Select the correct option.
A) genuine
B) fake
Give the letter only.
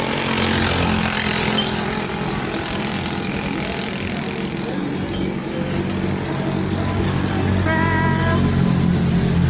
A